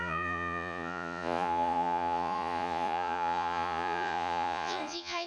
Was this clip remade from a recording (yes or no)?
yes